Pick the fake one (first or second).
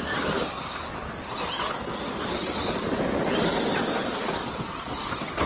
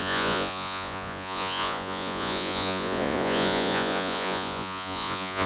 second